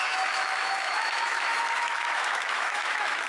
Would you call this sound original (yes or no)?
no